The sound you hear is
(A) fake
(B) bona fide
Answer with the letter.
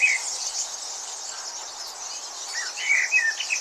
B